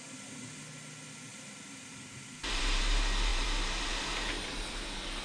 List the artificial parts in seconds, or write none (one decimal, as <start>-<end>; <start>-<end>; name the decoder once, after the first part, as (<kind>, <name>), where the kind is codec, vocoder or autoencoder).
1.3-2.8 (vocoder, BigVGAN v2); 3.3-3.9

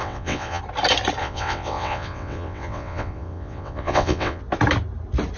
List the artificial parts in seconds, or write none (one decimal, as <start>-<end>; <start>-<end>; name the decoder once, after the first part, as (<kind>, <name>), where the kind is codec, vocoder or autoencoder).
0.0-0.6 (vocoder, WaveNeXt); 1.2-4.4

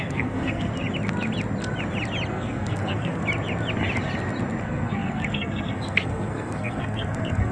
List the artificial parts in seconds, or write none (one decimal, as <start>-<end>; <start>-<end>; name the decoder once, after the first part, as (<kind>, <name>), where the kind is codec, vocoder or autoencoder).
0.0-0.7 (codec, SNAC); 2.3-3.2; 4.6-7.5

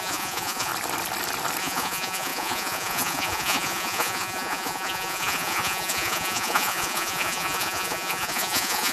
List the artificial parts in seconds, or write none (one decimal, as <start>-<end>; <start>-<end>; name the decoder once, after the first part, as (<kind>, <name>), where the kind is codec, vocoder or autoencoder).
0.0-0.7 (vocoder, Vocos); 1.6-8.9

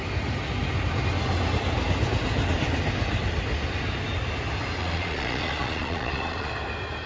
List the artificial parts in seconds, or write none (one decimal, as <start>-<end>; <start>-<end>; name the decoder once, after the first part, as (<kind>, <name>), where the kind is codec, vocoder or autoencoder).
4.8-6.5 (vocoder, Vocos)

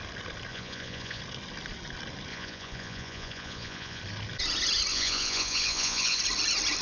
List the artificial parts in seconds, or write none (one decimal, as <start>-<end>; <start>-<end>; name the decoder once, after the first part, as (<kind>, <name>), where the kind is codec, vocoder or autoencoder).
0.5-1.2 (vocoder, Vocos); 2.3-4.0; 4.9-6.2

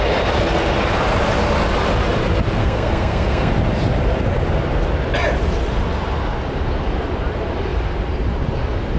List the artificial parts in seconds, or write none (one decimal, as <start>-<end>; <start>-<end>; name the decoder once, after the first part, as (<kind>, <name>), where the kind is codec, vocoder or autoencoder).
2.6-3.5 (codec, SNAC)

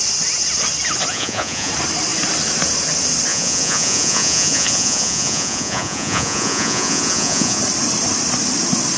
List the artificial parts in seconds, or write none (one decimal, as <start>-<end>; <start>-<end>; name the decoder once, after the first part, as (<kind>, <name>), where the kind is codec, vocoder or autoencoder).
1.1-1.7 (vocoder, Vocos); 3.3-7.6